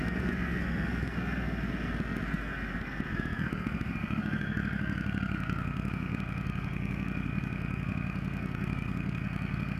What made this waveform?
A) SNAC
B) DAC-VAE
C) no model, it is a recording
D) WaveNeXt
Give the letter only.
A